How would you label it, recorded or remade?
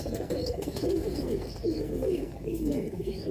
remade